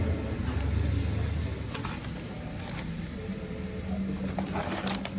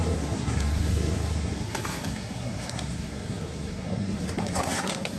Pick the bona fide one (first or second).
first